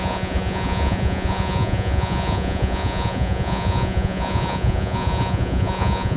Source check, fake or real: fake